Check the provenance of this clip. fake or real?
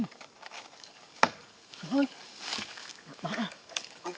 fake